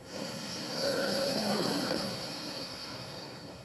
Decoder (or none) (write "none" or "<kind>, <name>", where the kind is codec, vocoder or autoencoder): codec, SNAC